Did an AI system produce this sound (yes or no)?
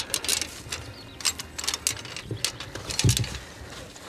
no